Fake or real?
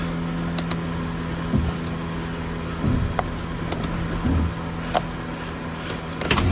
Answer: real